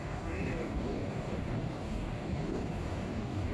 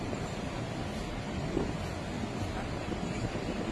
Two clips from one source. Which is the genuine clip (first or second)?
second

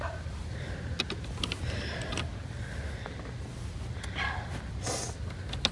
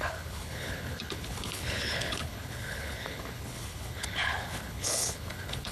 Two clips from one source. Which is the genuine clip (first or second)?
first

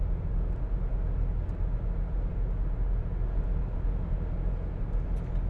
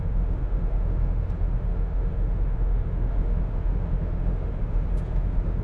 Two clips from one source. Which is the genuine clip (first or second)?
first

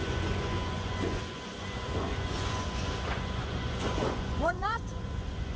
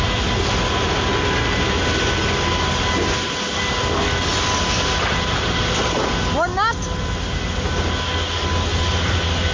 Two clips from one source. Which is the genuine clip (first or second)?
second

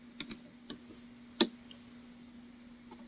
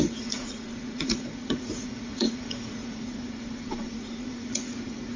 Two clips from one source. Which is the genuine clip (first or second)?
first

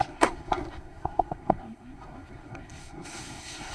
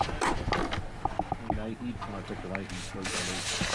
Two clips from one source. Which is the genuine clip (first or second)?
second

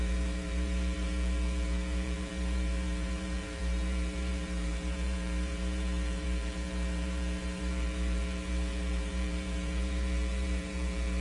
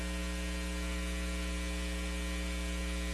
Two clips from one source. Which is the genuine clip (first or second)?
second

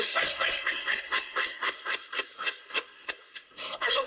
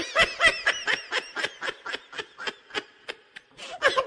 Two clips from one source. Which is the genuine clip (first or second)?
second